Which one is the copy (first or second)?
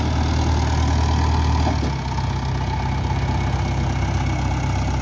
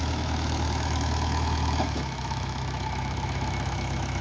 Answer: second